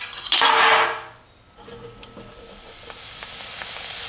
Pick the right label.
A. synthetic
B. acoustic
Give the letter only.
B